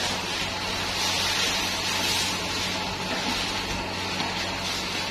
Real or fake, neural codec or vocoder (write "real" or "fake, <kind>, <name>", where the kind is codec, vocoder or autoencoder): real